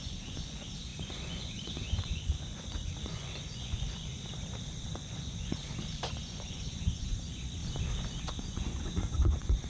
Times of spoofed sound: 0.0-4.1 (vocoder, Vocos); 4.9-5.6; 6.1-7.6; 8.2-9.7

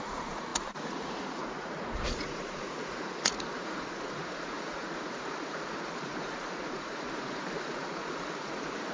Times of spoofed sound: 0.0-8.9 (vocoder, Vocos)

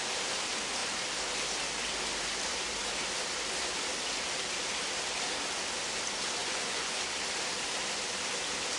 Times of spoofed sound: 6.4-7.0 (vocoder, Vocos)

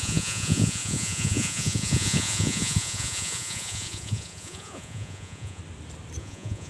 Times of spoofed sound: 0.0-5.6 (vocoder, Vocos); 6.2-6.7